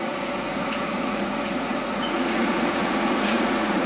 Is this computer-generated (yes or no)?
yes